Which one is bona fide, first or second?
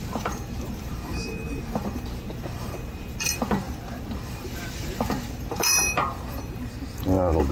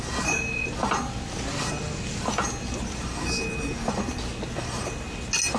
second